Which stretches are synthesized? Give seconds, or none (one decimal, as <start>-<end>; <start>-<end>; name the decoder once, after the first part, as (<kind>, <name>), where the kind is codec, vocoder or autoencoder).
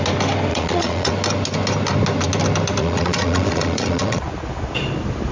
0.5-1.1 (vocoder, Vocos); 2.8-4.2